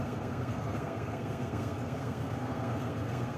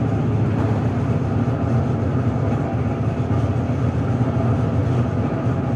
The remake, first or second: first